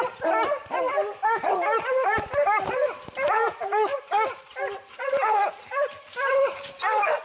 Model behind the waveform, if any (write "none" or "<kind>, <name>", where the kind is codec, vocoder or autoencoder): none